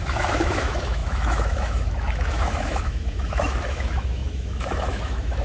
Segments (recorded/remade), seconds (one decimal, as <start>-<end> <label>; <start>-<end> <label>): 0.0-5.4 remade